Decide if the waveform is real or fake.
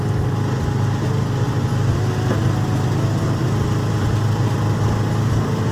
real